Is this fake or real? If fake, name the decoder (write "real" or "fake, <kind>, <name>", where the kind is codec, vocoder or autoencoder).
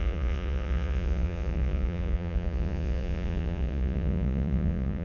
fake, vocoder, Vocos